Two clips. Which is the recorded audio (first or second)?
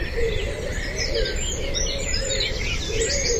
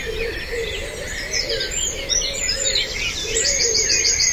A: second